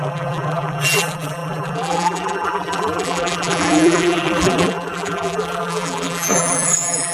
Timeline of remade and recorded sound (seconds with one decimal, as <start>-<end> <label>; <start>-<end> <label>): 0.0-7.1 remade